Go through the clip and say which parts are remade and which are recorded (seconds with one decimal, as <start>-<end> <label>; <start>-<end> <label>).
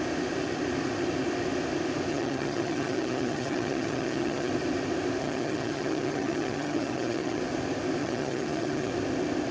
0.0-2.1 recorded; 2.1-4.5 remade; 4.5-5.2 recorded; 5.2-7.4 remade; 7.4-8.0 recorded; 8.0-8.9 remade; 8.9-9.5 recorded